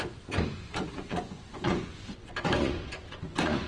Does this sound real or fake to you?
fake